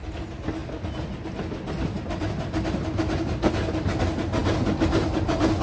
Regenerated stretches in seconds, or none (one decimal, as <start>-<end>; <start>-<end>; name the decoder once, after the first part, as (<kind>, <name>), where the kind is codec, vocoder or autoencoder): none